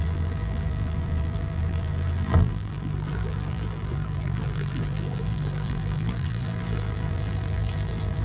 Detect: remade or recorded remade